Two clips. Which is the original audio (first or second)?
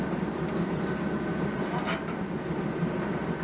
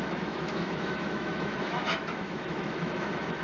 first